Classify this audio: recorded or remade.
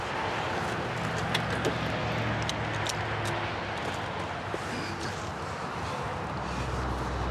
recorded